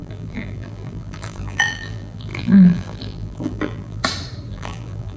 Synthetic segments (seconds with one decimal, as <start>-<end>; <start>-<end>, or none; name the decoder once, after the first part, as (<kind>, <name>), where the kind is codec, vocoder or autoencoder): 0.0-4.0 (vocoder, BigVGAN v2); 4.5-5.2